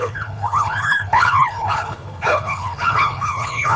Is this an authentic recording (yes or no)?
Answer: no